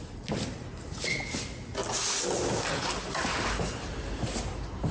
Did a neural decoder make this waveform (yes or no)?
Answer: no